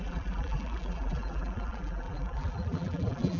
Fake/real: fake